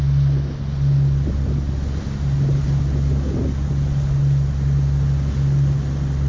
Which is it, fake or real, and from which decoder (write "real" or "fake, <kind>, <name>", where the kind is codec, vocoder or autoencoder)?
real